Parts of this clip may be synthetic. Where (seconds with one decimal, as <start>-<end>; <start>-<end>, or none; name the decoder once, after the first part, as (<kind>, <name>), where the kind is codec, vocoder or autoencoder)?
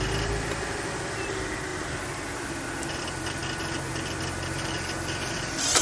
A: 0.0-3.4 (vocoder, BigVGAN v2); 3.9-5.8